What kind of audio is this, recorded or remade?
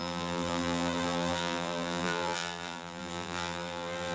remade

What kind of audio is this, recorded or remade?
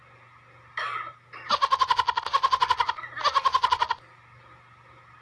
recorded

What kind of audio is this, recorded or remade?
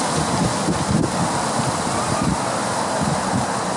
remade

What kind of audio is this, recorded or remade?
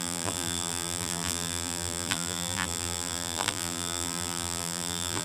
remade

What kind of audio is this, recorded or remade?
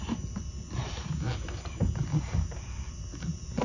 remade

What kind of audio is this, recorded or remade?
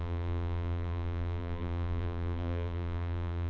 remade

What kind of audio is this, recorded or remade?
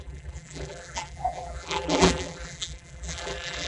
remade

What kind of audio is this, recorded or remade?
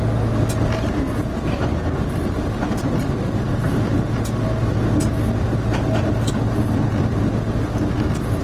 recorded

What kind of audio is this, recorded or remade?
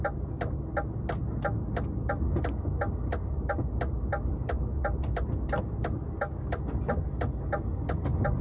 recorded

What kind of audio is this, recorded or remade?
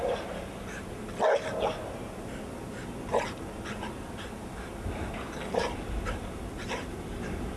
recorded